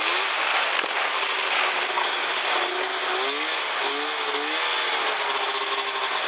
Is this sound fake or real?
real